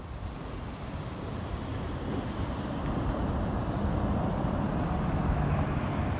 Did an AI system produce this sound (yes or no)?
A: no